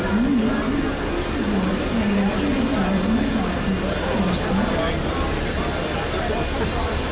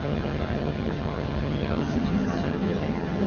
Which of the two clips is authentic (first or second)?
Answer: first